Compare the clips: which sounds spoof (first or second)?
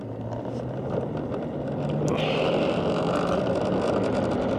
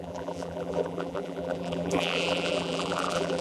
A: second